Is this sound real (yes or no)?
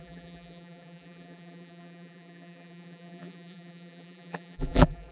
no